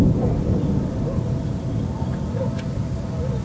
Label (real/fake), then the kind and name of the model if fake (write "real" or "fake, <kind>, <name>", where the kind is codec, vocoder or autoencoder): real